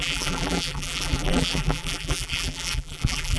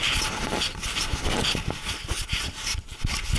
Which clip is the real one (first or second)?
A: second